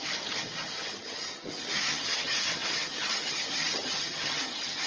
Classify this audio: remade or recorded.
remade